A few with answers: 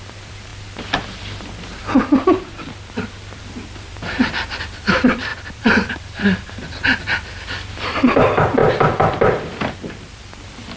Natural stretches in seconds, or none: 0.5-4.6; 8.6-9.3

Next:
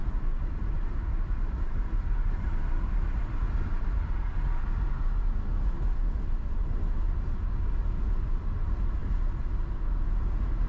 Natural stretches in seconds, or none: 3.4-10.7

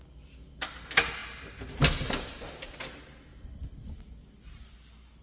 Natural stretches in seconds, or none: 0.0-5.2

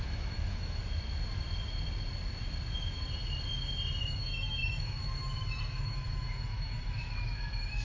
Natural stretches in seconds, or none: 0.8-4.0

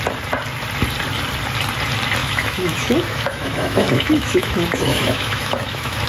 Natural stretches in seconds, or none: 0.0-2.2

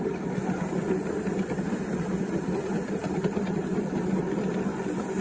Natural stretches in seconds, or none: 0.0-0.4; 1.1-3.0; 3.6-5.2